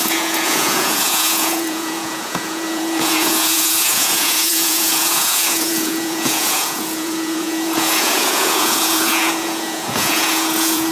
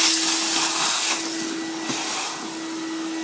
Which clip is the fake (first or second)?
first